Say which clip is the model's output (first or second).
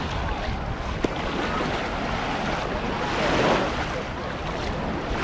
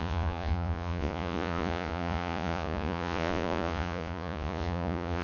second